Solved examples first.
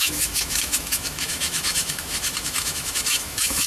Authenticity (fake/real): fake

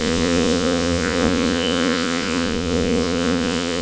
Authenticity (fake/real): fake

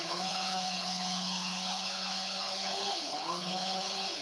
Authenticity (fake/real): fake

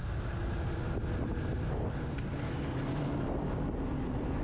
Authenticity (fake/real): real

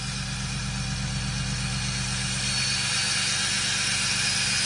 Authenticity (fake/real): real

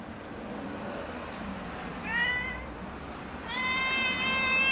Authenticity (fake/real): fake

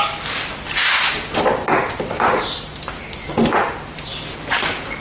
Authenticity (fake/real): real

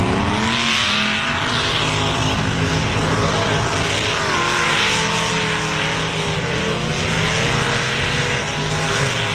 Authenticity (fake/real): real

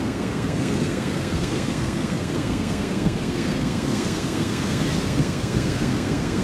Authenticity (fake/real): fake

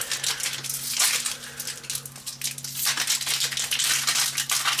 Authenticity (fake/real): real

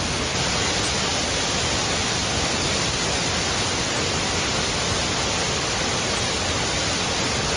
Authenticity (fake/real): real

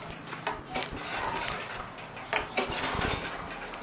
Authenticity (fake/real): real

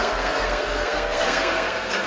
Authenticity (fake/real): fake